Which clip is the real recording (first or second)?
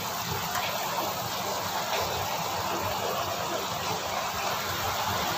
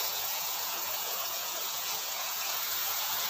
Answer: first